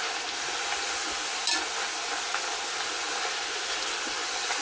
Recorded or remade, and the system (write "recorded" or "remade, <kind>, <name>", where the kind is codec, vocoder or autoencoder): recorded